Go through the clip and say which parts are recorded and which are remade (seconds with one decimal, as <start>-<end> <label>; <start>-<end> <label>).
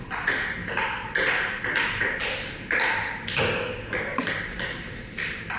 0.0-5.6 recorded